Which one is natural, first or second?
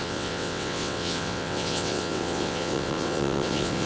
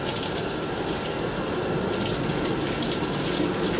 second